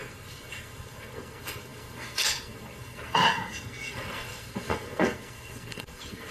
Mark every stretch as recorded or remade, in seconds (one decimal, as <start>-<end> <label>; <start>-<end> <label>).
0.0-6.3 remade